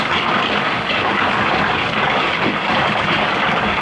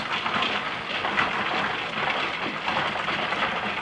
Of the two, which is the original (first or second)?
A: second